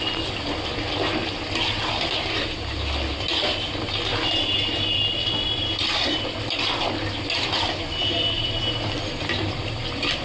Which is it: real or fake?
real